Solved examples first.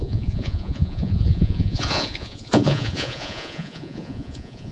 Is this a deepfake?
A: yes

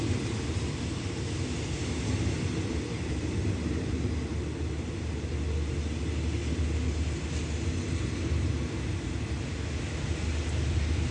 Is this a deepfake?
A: no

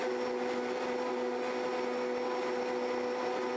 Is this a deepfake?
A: no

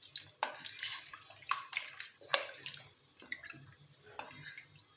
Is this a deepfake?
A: no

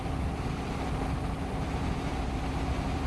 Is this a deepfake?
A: no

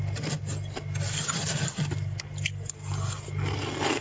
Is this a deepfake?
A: no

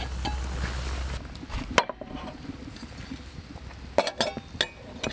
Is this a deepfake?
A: no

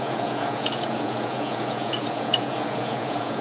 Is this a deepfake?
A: yes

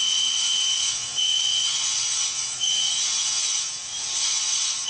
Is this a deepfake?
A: yes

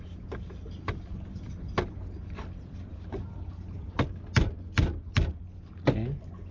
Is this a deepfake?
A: no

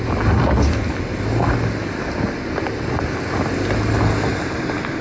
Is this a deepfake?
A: no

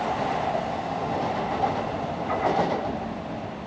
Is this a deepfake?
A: no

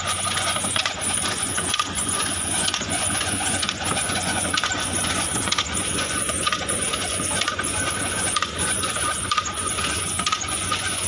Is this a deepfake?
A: yes